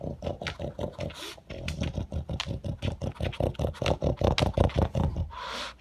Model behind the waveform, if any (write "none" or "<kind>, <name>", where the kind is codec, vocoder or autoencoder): none